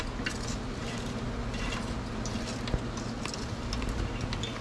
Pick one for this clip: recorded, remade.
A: recorded